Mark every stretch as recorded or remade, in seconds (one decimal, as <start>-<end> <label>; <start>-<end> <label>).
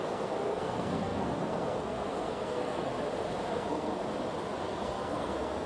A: 0.0-2.9 remade; 2.9-3.5 recorded; 3.5-3.9 remade; 3.9-4.6 recorded; 4.6-5.7 remade